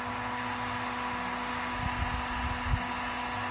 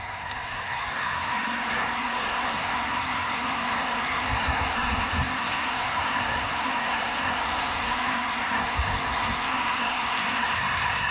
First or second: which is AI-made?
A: second